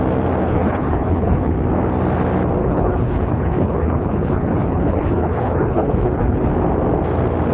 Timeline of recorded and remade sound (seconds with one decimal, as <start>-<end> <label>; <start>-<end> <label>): 0.0-0.4 recorded; 0.4-1.5 remade; 1.5-2.6 recorded; 2.6-6.5 remade; 6.5-7.5 recorded